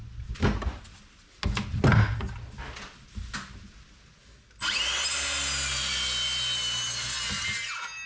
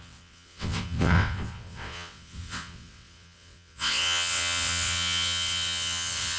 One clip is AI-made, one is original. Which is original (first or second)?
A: first